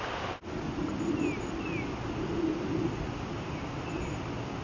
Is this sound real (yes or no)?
yes